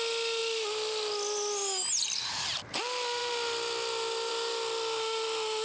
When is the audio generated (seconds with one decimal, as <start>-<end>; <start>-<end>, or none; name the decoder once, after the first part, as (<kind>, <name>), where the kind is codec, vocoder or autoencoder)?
none